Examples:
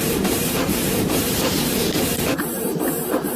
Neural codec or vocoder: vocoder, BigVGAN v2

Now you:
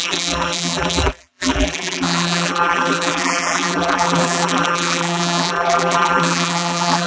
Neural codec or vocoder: vocoder, BigVGAN v2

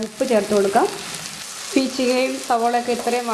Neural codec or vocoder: none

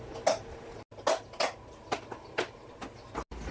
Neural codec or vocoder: none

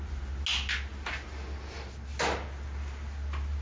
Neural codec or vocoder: none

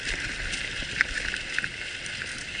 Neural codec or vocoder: none